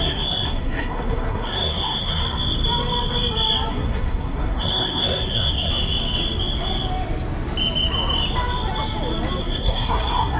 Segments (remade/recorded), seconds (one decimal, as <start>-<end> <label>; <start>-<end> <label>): 0.0-2.2 remade; 2.2-3.7 recorded; 3.7-5.7 remade; 5.7-9.4 recorded; 9.4-10.4 remade